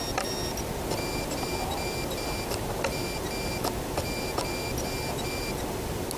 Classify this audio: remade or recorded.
recorded